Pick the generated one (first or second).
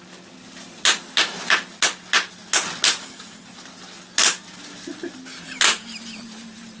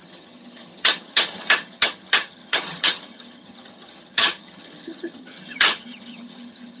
second